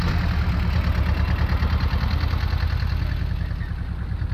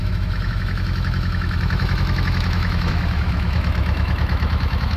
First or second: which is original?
first